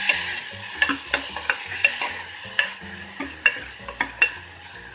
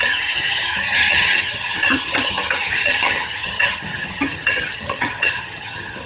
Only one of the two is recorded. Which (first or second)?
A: first